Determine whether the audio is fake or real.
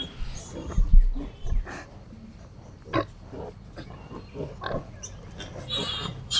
real